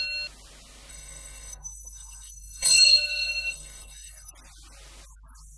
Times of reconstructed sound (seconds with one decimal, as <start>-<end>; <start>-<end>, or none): 0.9-4.3